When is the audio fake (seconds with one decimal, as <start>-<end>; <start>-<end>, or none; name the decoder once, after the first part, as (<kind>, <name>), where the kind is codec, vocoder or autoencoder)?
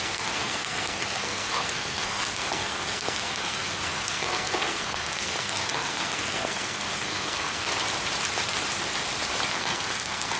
0.0-7.7 (codec, SNAC); 9.5-10.4